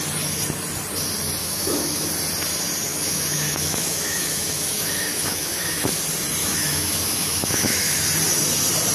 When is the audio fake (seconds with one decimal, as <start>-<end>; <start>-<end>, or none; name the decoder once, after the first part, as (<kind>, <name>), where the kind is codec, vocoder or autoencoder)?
1.4-2.1 (autoencoder, DAC-VAE); 2.9-6.0; 6.4-8.0